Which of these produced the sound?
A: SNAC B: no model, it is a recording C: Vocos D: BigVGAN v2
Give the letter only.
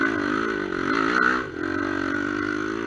B